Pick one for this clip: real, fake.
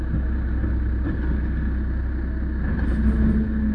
real